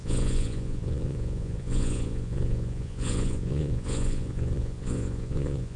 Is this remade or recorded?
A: remade